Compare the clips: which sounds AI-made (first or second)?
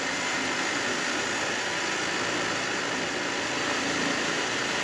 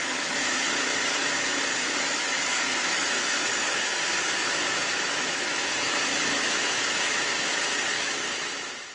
second